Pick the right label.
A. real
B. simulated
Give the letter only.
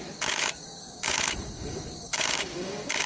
B